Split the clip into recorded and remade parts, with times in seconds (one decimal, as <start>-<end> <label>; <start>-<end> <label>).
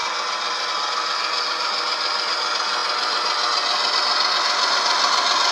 0.0-5.5 recorded